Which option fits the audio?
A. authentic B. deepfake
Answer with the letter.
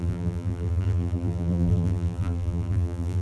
B